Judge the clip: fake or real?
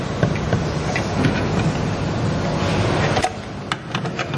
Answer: real